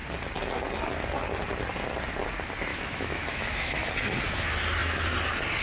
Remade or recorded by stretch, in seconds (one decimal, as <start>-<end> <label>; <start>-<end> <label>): 0.0-2.7 recorded; 2.7-3.9 remade; 3.9-5.6 recorded